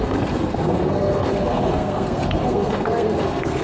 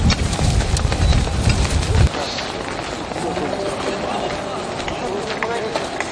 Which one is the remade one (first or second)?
first